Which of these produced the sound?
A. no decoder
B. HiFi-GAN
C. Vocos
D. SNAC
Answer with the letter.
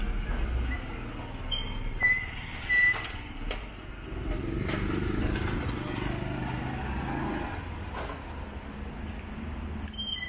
A